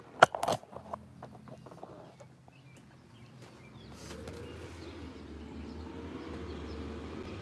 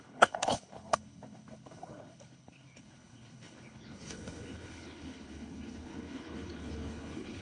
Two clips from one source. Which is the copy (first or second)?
second